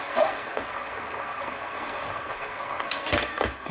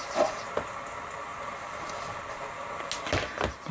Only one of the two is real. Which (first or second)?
second